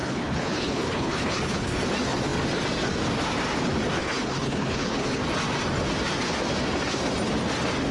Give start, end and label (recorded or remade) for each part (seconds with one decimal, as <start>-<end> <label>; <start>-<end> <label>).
0.0-1.8 remade; 1.8-4.0 recorded; 4.0-5.2 remade; 5.2-7.9 recorded